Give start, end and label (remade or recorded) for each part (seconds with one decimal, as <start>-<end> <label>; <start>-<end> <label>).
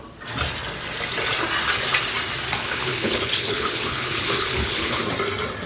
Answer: 0.0-2.6 recorded; 2.6-5.0 remade; 5.0-5.7 recorded